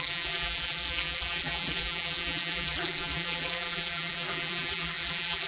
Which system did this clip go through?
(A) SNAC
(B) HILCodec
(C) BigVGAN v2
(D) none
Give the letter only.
C